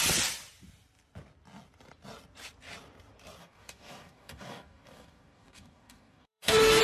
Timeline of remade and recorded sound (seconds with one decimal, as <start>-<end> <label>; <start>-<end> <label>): 0.0-3.4 recorded; 3.4-6.8 remade